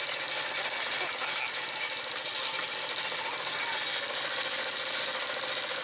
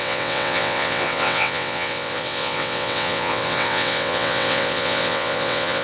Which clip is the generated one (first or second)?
second